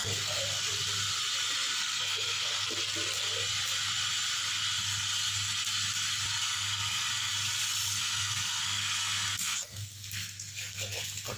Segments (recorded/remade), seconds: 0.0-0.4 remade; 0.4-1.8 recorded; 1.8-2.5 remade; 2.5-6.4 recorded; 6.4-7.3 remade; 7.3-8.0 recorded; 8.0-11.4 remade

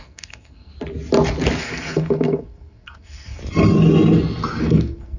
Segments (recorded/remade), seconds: 0.0-0.7 remade; 0.7-1.6 recorded; 1.6-3.4 remade; 3.4-4.6 recorded; 4.6-5.2 remade

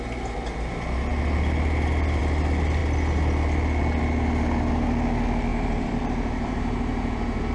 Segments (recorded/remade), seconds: 0.0-5.5 recorded; 5.5-7.5 remade

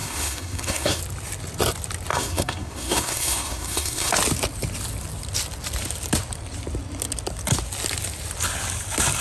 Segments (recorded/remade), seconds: 0.0-1.0 remade; 1.0-2.1 recorded; 2.1-4.1 remade; 4.1-9.2 recorded

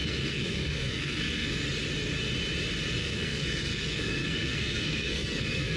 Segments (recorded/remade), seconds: 0.0-1.6 remade; 1.6-3.0 recorded; 3.0-5.8 remade

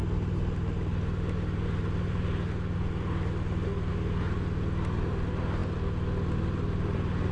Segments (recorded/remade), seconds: 0.0-7.3 recorded

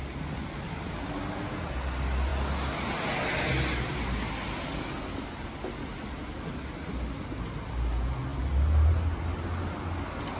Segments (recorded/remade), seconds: 0.0-10.4 recorded